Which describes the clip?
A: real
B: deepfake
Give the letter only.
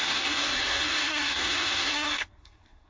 B